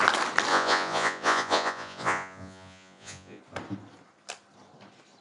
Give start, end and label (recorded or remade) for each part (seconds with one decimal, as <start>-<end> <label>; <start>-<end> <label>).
0.0-0.5 recorded; 0.5-3.4 remade; 3.4-5.2 recorded